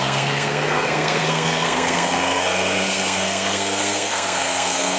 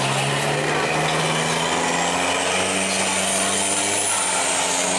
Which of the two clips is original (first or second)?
second